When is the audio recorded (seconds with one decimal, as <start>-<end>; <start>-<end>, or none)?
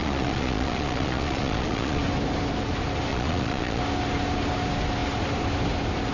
2.0-3.1; 3.8-6.1